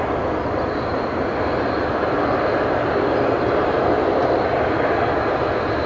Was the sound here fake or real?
real